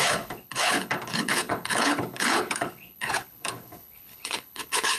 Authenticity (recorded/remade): remade